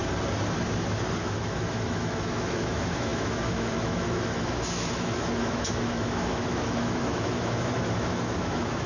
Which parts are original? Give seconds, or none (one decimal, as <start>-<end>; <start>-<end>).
0.0-1.2

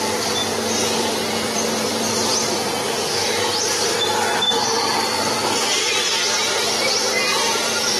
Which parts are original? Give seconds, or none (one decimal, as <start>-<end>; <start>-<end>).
0.4-1.0; 2.3-6.6

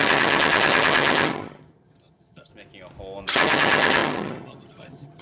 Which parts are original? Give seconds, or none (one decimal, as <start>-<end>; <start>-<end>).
2.5-3.3

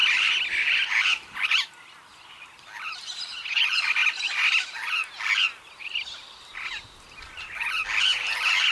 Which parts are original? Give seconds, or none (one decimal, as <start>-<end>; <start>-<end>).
4.0-8.7

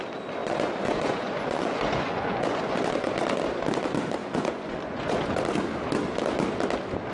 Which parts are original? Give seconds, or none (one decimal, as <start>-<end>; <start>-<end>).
0.0-0.4; 3.1-4.2; 5.4-7.1